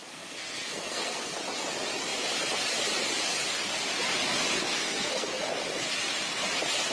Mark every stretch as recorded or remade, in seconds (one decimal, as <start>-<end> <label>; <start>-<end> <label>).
0.0-1.4 remade; 1.4-4.7 recorded; 4.7-5.4 remade; 5.4-6.9 recorded